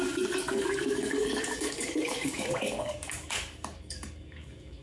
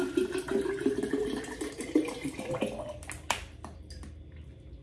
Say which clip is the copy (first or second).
first